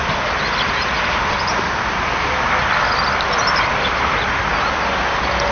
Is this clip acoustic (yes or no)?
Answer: yes